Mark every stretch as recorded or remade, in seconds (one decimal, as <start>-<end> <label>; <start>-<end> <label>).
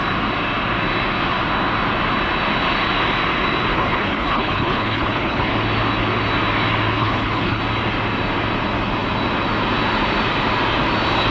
0.0-3.7 recorded; 3.7-5.5 remade; 5.5-7.0 recorded; 7.0-7.6 remade; 7.6-11.3 recorded